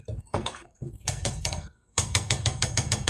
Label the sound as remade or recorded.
remade